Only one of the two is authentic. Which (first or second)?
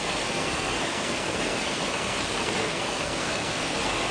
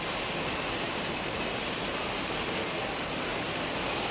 second